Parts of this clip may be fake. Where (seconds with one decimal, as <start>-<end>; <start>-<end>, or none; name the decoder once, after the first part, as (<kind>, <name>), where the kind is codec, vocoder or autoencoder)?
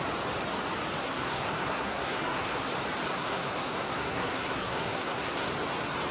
1.0-2.7 (codec, SNAC); 3.1-5.5